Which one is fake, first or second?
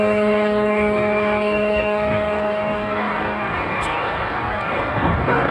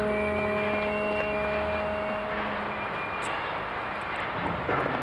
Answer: first